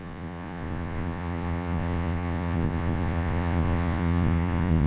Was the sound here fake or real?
fake